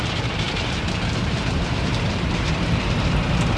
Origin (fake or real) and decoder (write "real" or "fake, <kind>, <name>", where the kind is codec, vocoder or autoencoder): fake, vocoder, BigVGAN v2